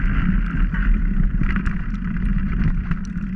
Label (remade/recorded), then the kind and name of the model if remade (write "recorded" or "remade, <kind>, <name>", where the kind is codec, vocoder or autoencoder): recorded